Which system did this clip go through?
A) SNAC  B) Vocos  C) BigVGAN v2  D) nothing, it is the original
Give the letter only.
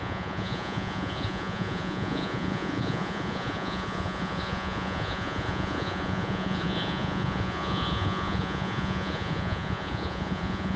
B